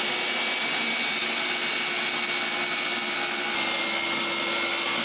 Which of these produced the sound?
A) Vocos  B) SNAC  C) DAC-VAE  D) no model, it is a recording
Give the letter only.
D